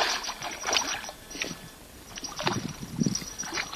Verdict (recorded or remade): recorded